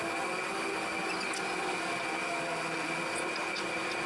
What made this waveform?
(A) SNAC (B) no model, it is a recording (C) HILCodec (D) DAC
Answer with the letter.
B